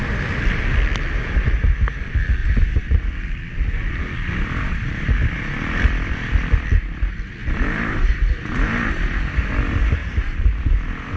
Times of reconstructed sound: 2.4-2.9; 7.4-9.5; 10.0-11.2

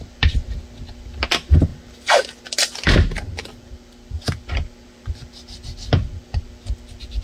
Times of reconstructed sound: none

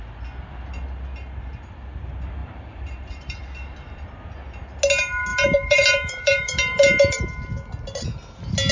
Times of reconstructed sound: 2.4-3.4; 5.3-7.5

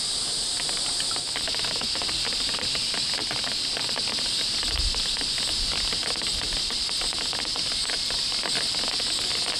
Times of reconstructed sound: none

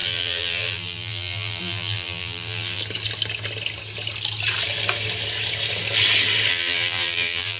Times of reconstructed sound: 0.0-2.8; 6.5-7.6

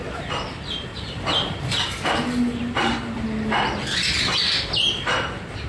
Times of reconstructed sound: 0.9-2.6